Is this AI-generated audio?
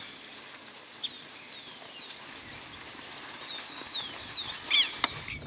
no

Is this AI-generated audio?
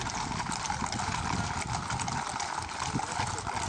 no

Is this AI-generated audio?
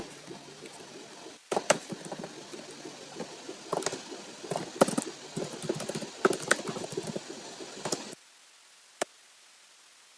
no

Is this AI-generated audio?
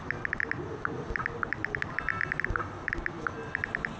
no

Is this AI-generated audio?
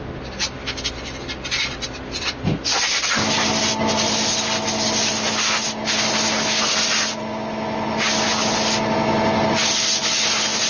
no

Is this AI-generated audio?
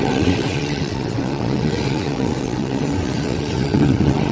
yes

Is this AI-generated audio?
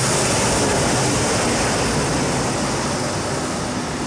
no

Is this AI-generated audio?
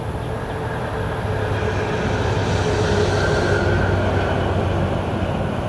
no